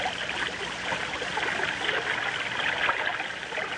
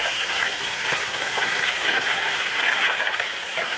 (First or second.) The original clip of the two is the first